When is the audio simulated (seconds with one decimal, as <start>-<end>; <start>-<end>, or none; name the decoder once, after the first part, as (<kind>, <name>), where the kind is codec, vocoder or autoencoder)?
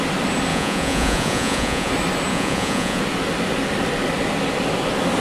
0.5-1.9 (vocoder, Vocos); 2.3-3.0